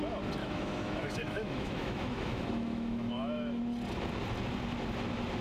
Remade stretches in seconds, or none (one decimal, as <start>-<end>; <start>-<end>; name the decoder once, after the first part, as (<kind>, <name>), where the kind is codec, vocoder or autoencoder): 0.4-3.6 (autoencoder, DAC-VAE)